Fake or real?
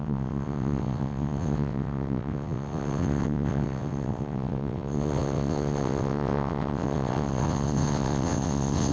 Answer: fake